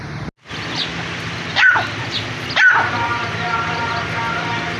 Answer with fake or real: real